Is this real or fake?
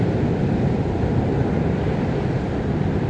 real